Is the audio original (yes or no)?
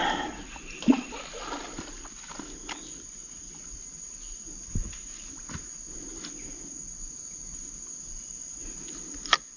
yes